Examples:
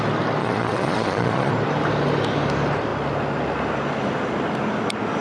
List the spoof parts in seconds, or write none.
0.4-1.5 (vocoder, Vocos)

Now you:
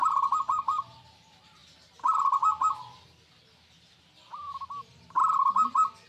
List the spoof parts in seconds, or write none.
5.2-6.1 (vocoder, BigVGAN v2)

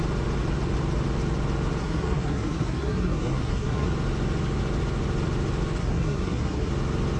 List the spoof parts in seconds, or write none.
1.8-3.9 (codec, SNAC); 5.8-6.7